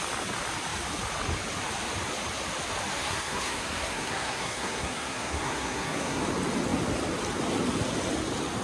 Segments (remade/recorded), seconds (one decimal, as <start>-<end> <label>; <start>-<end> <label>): 0.0-3.0 recorded; 3.0-6.2 remade; 6.2-8.6 recorded